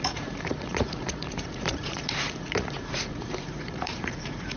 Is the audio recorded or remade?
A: remade